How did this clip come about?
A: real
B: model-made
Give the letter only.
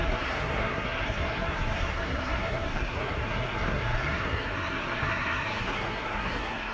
B